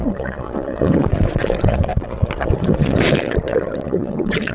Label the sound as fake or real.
fake